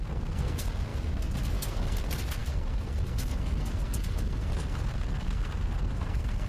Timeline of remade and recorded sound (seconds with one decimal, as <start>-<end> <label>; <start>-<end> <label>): 0.0-6.5 remade